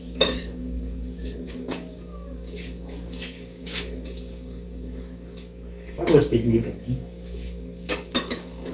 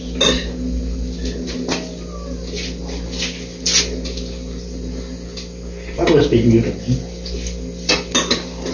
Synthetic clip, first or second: first